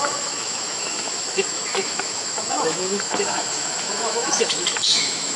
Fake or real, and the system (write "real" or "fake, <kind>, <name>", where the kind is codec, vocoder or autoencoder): fake, autoencoder, DAC-VAE